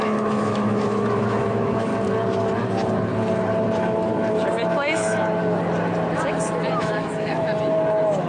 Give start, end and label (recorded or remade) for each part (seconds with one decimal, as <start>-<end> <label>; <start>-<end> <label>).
0.0-1.9 remade; 1.9-6.8 recorded; 6.8-7.5 remade; 7.5-8.3 recorded